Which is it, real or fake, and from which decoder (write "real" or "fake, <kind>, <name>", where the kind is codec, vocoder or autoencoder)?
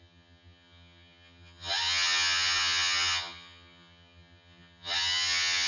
fake, vocoder, HiFi-GAN